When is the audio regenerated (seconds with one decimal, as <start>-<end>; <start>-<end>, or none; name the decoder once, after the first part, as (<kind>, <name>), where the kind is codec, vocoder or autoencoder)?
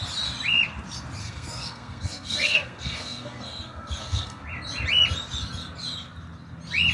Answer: 1.2-4.4 (codec, SNAC)